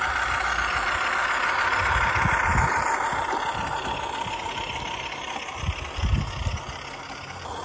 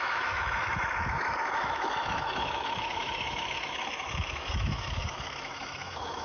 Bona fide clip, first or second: first